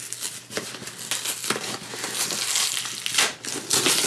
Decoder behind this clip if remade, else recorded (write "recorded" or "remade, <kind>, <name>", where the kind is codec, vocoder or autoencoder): recorded